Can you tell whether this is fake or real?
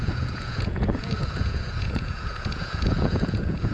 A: fake